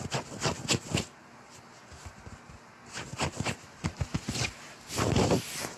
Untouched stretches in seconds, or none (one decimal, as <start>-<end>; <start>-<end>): 0.0-5.8